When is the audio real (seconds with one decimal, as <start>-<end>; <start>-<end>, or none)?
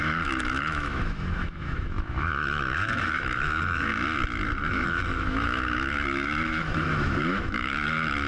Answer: 3.9-4.7